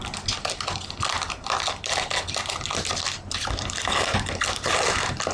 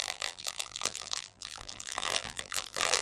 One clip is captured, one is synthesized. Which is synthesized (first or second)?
second